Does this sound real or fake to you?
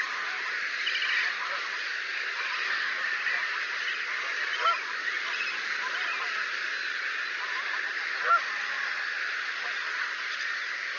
real